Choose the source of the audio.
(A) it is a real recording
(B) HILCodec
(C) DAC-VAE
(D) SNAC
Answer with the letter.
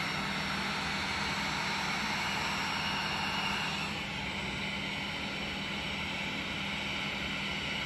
A